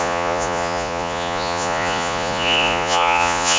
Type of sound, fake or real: fake